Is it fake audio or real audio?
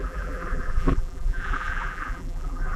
fake